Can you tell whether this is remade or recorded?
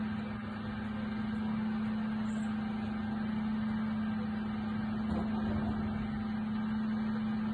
recorded